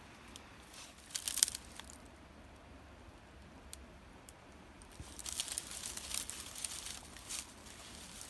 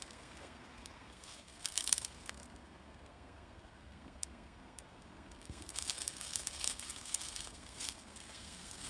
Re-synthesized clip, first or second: second